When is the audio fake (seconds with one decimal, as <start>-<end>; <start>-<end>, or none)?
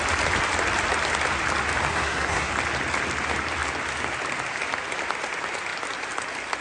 1.9-2.5